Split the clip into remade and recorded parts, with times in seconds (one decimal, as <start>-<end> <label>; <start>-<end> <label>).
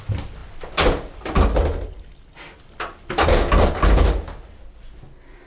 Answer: 0.0-5.5 recorded